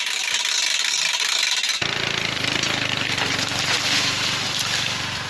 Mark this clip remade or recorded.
remade